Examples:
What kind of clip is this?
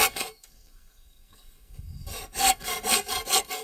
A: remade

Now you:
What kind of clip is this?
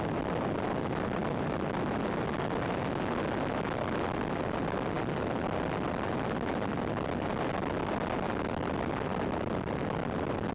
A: recorded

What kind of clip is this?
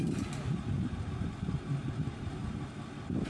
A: recorded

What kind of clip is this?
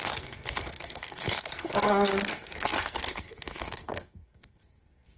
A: remade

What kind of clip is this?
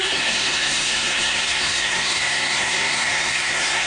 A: remade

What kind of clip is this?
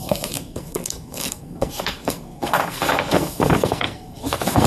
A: remade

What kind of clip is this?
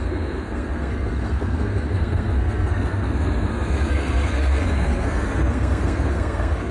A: remade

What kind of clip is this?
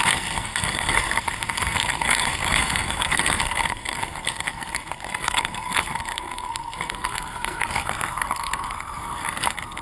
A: remade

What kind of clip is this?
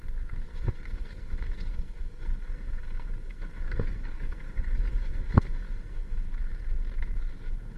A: remade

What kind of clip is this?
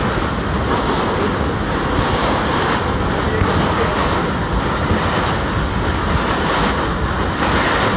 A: recorded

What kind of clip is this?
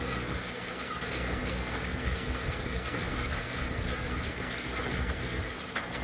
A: remade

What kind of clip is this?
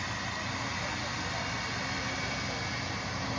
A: recorded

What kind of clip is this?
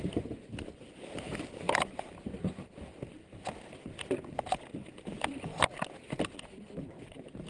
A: recorded